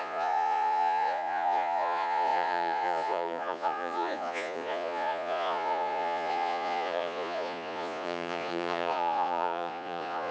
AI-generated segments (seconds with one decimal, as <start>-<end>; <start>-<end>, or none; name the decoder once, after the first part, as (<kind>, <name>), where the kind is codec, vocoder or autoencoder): 0.0-10.3 (vocoder, Vocos)

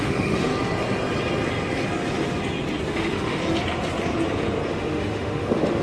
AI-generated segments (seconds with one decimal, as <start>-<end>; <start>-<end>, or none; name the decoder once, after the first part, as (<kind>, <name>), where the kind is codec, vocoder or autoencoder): 0.0-0.5 (autoencoder, DAC-VAE); 2.9-3.4; 4.7-5.8

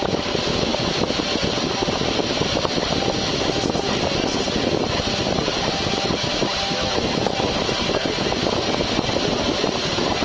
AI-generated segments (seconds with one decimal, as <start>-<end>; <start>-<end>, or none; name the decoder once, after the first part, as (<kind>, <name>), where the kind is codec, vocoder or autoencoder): none